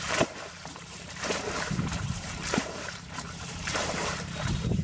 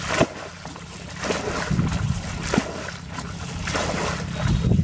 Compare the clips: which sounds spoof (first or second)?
first